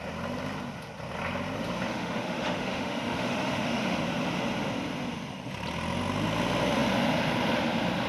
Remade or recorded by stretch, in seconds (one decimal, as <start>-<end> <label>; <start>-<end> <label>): 0.0-1.9 recorded; 1.9-4.0 remade; 4.0-8.1 recorded